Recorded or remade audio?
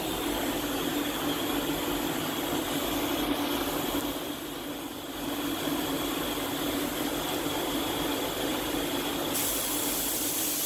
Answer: recorded